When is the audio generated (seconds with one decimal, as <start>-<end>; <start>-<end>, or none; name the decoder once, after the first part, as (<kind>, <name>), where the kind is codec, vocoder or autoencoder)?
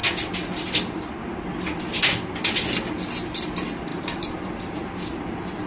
none